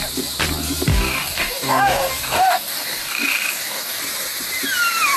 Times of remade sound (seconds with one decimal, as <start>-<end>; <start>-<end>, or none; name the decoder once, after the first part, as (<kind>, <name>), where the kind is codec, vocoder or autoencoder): 0.9-4.0 (codec, DAC)